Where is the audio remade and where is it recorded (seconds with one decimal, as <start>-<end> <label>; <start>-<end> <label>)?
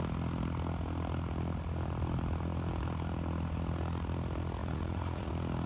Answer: 0.0-4.6 recorded; 4.6-5.3 remade; 5.3-5.7 recorded